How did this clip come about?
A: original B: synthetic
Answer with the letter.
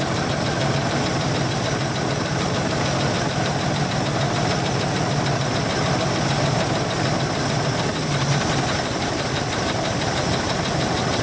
A